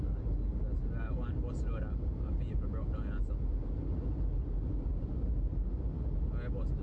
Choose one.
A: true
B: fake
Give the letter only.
A